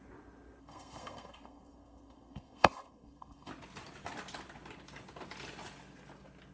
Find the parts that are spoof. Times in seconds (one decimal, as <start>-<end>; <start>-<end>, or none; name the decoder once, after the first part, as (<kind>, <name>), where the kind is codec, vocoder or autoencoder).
0.6-3.5 (codec, SNAC)